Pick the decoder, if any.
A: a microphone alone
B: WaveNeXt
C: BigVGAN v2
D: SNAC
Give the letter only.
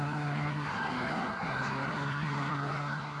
D